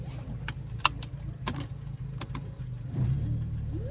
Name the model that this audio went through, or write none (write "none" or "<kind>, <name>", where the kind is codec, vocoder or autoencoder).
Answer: none